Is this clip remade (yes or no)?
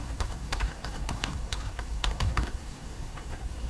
yes